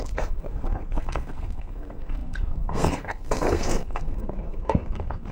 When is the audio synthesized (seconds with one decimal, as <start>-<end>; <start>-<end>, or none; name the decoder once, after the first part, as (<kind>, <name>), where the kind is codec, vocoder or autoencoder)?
0.0-5.3 (codec, SNAC)